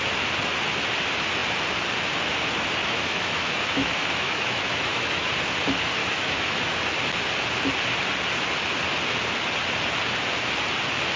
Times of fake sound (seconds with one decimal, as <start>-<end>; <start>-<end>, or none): 2.8-5.3; 6.0-6.8